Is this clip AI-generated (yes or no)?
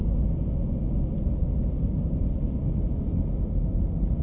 no